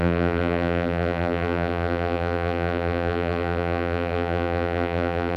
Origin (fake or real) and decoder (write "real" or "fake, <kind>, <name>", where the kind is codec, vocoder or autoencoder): fake, vocoder, BigVGAN v2